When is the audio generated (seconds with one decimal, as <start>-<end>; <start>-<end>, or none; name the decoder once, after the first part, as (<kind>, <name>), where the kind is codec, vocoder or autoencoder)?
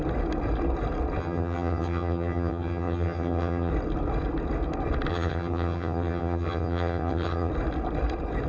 1.2-3.7 (vocoder, HiFi-GAN); 5.1-7.5